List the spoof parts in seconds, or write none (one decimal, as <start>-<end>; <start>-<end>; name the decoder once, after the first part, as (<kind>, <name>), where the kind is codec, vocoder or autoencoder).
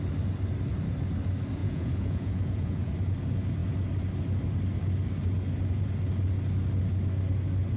1.6-2.9 (vocoder, Vocos)